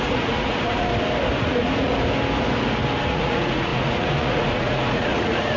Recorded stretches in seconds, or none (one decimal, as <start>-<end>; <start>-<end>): 0.9-1.4; 1.9-3.0

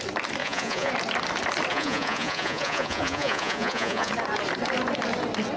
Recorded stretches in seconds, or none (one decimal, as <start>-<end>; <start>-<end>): 0.0-0.4; 0.9-1.7; 4.1-5.6

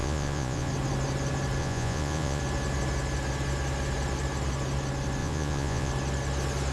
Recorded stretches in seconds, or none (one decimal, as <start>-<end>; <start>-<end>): 0.7-1.6; 2.4-5.2; 5.9-6.7

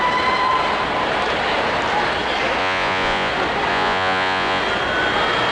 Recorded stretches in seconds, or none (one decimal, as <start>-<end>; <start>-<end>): 0.0-2.6; 3.3-3.7; 4.6-5.5

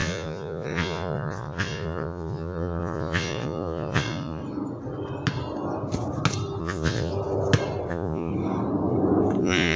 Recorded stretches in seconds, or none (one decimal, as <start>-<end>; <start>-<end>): 4.4-6.6; 7.1-7.9; 8.3-9.4